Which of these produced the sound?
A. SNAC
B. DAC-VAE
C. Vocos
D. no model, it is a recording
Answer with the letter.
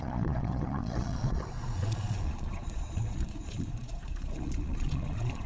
C